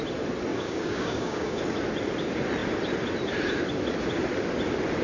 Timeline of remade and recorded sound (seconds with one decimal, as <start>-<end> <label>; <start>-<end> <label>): 0.0-0.5 recorded; 0.5-1.6 remade; 1.6-5.0 recorded